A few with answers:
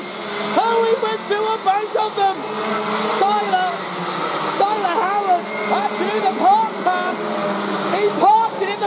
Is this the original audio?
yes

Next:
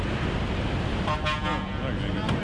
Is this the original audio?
yes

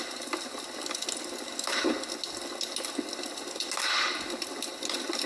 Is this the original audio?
yes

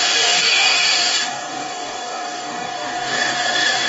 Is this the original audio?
no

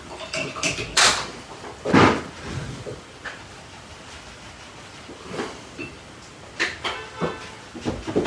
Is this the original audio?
yes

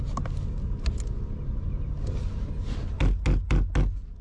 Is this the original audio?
yes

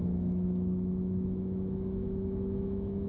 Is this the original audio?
no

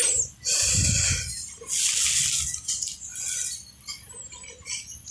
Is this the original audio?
yes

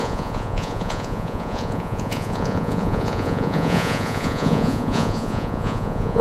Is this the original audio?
no